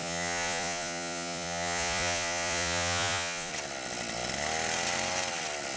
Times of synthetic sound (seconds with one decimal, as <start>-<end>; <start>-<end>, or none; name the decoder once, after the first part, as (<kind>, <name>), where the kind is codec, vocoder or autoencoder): 0.0-3.5 (vocoder, Vocos)